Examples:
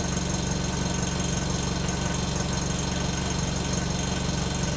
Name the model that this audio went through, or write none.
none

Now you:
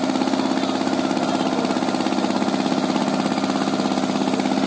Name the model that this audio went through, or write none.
none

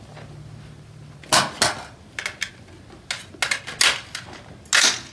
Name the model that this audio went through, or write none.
none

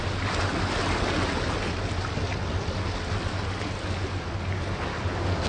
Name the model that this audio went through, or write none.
none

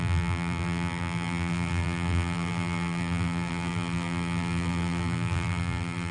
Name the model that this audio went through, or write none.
vocoder, BigVGAN v2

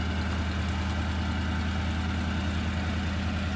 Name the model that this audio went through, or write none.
none